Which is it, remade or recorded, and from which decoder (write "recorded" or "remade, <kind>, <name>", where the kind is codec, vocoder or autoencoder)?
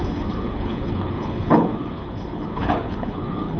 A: remade, codec, HILCodec